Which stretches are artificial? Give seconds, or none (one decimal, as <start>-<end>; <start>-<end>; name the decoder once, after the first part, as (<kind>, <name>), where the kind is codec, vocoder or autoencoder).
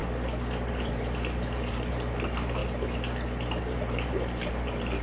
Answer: 0.7-2.6 (vocoder, BigVGAN v2); 3.6-5.0